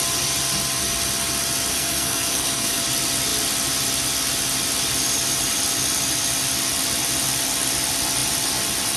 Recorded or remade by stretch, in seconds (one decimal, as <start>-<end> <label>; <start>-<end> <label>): 0.0-1.7 recorded; 1.7-2.8 remade; 2.8-9.0 recorded